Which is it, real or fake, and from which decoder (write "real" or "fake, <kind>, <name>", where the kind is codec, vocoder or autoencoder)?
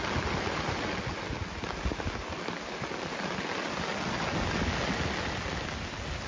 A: real